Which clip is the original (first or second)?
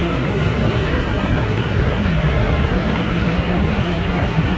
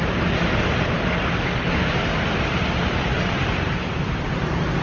second